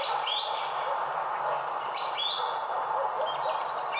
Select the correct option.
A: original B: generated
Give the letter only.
A